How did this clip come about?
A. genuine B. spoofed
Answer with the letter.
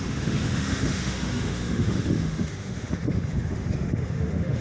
B